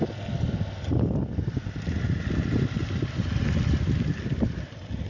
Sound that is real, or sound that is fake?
real